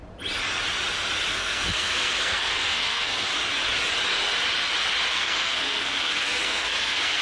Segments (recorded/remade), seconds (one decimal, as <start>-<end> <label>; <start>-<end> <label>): 0.0-1.3 recorded; 1.3-3.3 remade; 3.3-5.1 recorded; 5.1-7.2 remade